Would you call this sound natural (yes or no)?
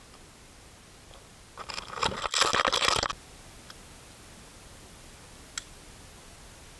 yes